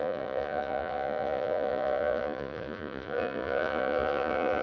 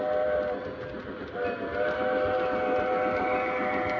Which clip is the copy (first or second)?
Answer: first